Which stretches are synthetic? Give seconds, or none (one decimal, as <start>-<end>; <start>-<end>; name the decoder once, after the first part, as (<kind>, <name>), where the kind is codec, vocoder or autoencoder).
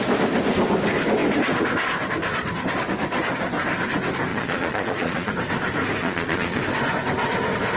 4.3-5.3 (vocoder, Vocos); 6.0-6.6